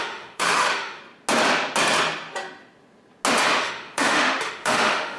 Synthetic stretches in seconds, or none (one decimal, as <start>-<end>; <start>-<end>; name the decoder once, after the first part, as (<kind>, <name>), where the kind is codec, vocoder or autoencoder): 0.0-1.0 (autoencoder, DAC-VAE); 3.6-5.2